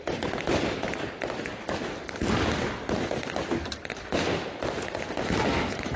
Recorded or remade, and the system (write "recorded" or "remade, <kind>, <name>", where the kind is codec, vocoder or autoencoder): recorded